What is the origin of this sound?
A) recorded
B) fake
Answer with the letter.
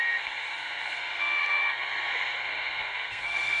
B